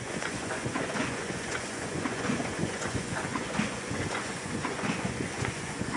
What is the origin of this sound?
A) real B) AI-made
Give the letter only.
B